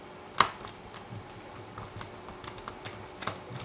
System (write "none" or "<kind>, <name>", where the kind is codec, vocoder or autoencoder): none